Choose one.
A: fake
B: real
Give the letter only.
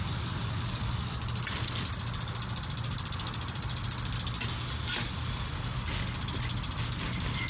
B